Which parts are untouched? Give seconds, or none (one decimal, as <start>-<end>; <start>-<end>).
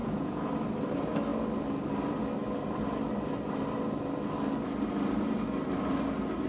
0.5-6.5